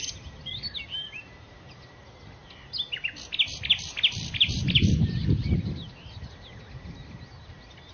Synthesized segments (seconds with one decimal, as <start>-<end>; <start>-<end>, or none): 3.5-5.5